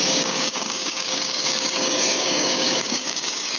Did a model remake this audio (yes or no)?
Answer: yes